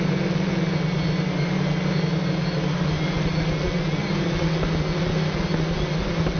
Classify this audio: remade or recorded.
recorded